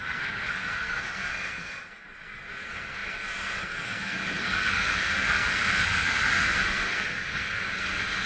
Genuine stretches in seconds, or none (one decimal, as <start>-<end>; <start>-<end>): none